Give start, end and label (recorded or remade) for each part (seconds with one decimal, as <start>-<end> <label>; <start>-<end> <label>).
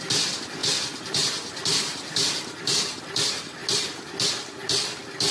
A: 0.0-5.3 recorded